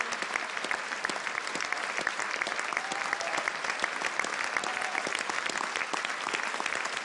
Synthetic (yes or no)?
no